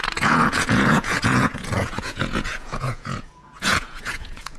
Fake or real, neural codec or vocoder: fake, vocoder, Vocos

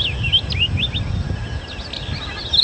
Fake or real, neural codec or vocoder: real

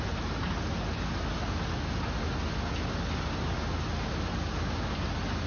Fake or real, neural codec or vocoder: real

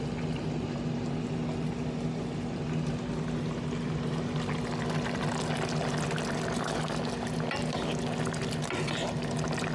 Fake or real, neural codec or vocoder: real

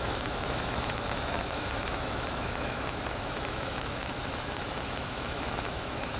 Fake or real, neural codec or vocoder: fake, autoencoder, DAC-VAE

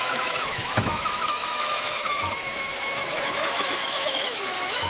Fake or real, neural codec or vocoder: fake, autoencoder, DAC-VAE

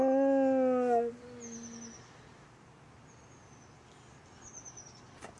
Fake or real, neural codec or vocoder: real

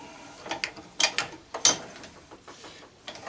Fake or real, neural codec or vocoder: real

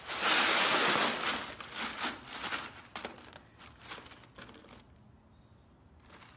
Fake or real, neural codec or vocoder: real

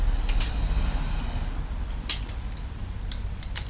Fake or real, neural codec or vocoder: real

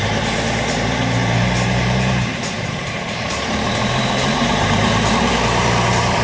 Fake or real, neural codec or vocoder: fake, vocoder, BigVGAN v2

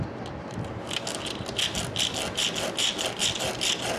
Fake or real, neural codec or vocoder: real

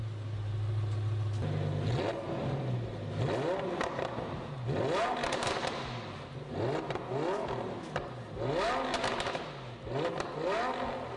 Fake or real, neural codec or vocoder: real